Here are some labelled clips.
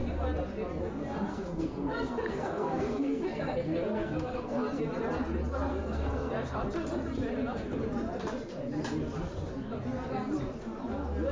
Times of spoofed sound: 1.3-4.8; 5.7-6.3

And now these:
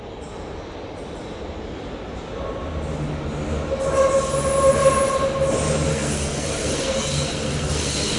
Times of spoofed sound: 5.9-8.2

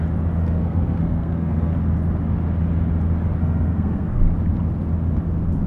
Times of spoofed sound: 0.4-1.7; 3.4-4.2

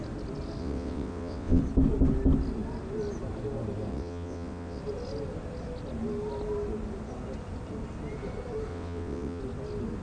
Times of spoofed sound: 0.6-1.6; 3.9-4.8; 8.7-9.4

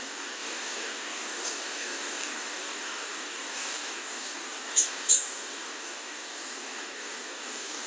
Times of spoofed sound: 0.0-7.9

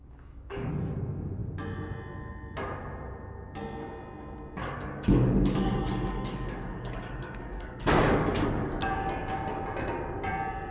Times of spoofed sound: 0.0-0.7; 4.6-8.7

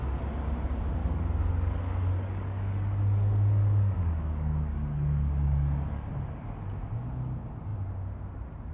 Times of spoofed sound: 1.0-6.1

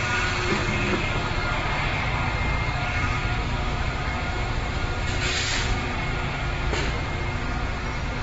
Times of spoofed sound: none